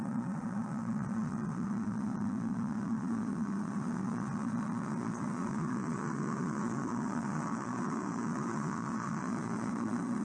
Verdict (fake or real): fake